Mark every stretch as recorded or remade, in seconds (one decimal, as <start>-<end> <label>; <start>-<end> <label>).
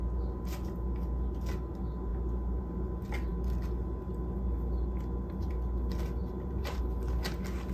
0.0-6.2 recorded; 6.2-6.8 remade; 6.8-7.7 recorded